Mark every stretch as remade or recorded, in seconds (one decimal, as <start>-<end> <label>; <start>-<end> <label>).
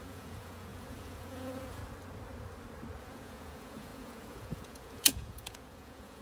0.0-1.8 remade; 1.8-3.0 recorded; 3.0-6.2 remade